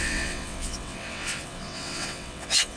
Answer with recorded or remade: remade